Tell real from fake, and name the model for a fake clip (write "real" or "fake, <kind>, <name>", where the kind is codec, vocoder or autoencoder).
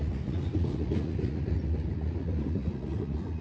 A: fake, vocoder, Vocos